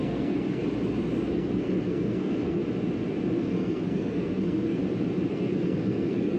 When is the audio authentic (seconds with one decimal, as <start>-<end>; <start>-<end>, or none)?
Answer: 0.6-1.3; 2.6-3.3; 4.8-5.3